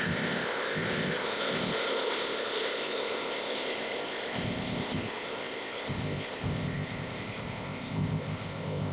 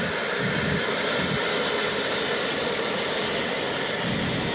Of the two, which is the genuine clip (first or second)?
second